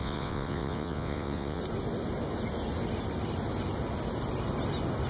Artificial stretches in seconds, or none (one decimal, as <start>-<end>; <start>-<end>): 0.0-1.6